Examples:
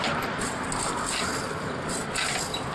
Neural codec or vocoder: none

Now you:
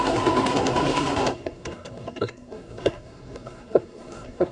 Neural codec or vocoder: codec, SNAC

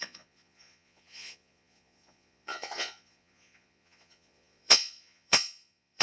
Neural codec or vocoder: vocoder, Vocos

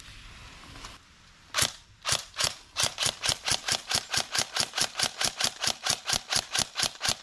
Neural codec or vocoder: none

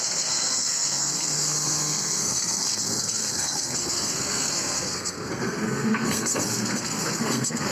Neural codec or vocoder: codec, SNAC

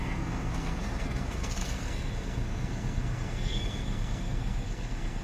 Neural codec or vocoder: codec, SNAC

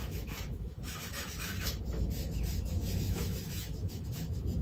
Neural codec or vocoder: autoencoder, DAC-VAE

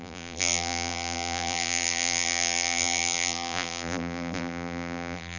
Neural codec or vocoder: vocoder, BigVGAN v2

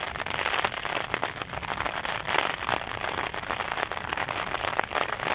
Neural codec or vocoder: none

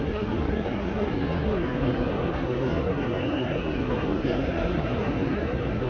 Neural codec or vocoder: codec, SNAC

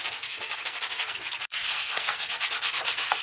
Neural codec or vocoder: codec, SNAC